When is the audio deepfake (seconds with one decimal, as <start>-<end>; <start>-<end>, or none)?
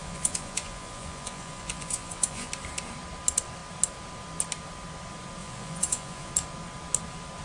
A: 0.0-2.5; 5.4-6.3